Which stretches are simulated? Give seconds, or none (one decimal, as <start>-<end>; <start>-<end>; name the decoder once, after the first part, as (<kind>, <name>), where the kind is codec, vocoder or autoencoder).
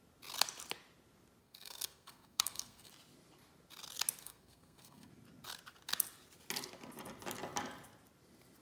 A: 1.4-2.9 (codec, SNAC); 4.2-5.1